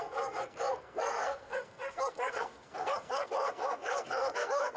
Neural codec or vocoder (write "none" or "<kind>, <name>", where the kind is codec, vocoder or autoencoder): codec, SNAC